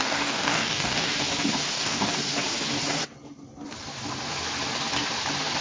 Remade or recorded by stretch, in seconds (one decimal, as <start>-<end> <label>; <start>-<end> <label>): 0.0-1.1 remade; 1.1-1.7 recorded; 1.7-2.1 remade; 2.1-5.6 recorded